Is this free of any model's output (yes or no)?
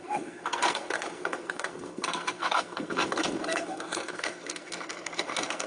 no